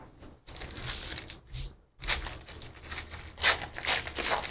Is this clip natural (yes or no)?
yes